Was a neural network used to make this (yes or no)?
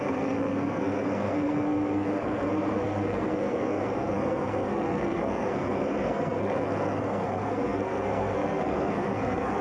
yes